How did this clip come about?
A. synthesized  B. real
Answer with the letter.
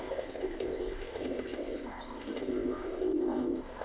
A